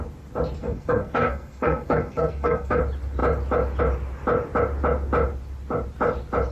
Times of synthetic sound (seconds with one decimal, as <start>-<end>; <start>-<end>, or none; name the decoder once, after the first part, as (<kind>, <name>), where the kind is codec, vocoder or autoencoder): 0.6-2.8 (codec, SNAC)